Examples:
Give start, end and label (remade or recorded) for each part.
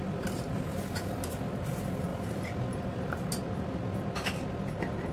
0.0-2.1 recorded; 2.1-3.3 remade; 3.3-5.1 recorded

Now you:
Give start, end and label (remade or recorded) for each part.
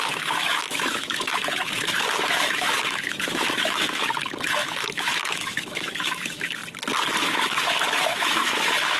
0.0-6.6 remade; 6.6-7.2 recorded; 7.2-9.0 remade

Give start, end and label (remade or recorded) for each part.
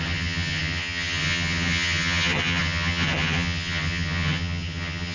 0.0-5.1 remade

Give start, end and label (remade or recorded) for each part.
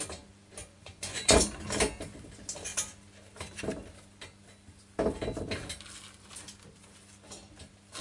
0.0-0.6 recorded; 0.6-1.6 remade; 1.6-8.0 recorded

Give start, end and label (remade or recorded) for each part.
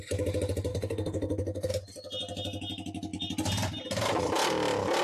0.0-0.7 recorded; 0.7-1.7 remade; 1.7-5.0 recorded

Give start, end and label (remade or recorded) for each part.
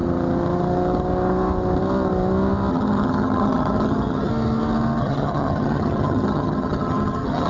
0.0-2.7 recorded; 2.7-4.3 remade; 4.3-5.0 recorded; 5.0-7.5 remade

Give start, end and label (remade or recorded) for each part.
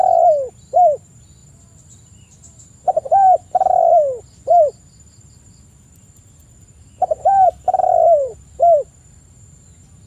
0.0-1.4 recorded; 1.4-6.0 remade; 6.0-6.4 recorded; 6.4-9.3 remade; 9.3-10.1 recorded